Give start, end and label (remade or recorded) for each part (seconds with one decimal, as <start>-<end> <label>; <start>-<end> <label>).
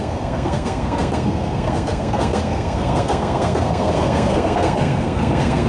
0.0-5.7 remade